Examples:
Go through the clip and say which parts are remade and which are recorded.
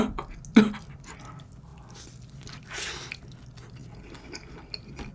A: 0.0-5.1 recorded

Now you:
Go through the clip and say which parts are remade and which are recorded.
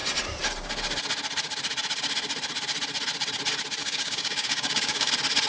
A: 0.0-3.8 recorded; 3.8-5.1 remade; 5.1-5.5 recorded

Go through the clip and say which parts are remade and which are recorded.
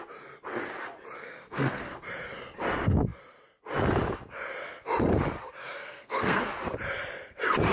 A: 0.0-1.2 recorded; 1.2-1.8 remade; 1.8-5.8 recorded; 5.8-6.4 remade; 6.4-7.7 recorded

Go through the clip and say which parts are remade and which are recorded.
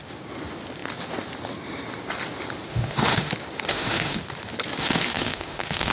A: 0.0-2.7 recorded; 2.7-3.3 remade; 3.3-3.7 recorded; 3.7-4.2 remade; 4.2-4.8 recorded; 4.8-5.9 remade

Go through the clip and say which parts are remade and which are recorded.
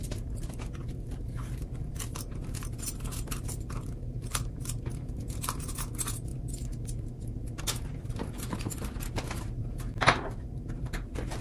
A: 0.0-11.4 remade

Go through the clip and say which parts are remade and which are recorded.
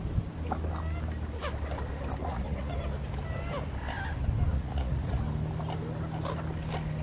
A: 0.0-2.2 recorded; 2.2-2.7 remade; 2.7-4.5 recorded; 4.5-5.2 remade; 5.2-7.0 recorded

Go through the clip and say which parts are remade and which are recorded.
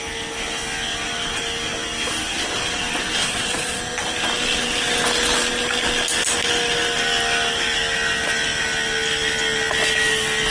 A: 0.0-3.2 recorded; 3.2-3.8 remade; 3.8-10.5 recorded